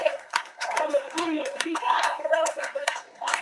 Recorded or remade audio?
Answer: remade